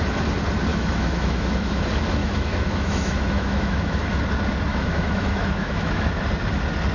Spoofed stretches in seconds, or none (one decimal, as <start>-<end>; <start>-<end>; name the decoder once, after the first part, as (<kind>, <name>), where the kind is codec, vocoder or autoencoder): 0.7-1.8 (autoencoder, DAC-VAE); 2.2-4.2; 4.7-6.2